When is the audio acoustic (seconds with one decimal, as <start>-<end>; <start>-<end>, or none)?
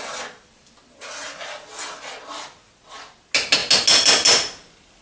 0.0-5.0